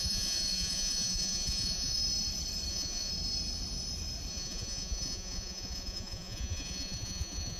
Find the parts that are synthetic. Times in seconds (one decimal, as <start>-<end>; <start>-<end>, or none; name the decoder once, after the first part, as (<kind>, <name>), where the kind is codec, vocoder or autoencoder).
0.0-2.0 (vocoder, Vocos); 2.7-3.1; 4.3-7.6